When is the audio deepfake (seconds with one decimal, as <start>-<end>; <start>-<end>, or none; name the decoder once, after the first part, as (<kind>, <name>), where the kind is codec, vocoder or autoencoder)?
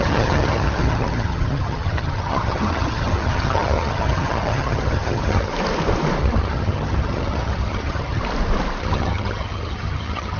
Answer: 0.0-5.5 (vocoder, HiFi-GAN); 6.2-8.2; 8.8-10.4